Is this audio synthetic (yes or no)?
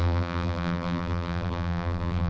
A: yes